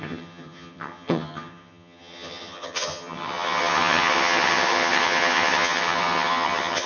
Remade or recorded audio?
remade